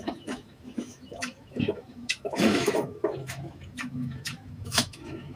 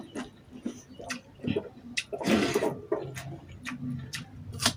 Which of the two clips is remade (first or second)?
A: first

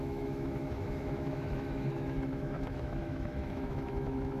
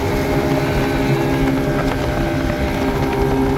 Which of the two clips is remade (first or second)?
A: first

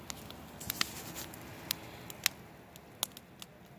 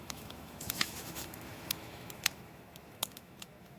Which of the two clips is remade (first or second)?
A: second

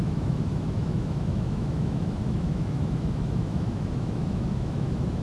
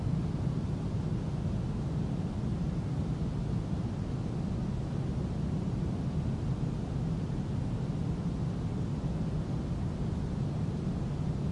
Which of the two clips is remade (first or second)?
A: first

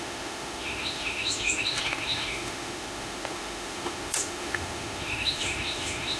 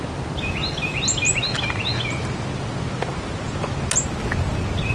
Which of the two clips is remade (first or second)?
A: first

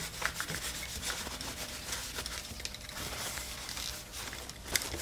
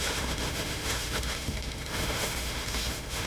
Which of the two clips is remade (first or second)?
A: second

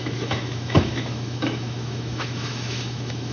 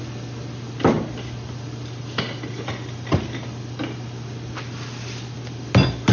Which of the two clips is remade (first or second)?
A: first